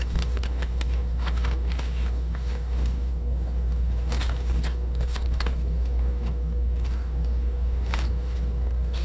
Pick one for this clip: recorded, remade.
remade